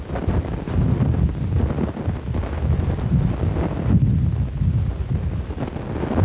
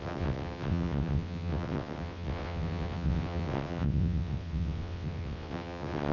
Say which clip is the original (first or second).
first